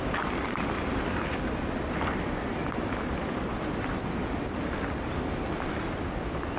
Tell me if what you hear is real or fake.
real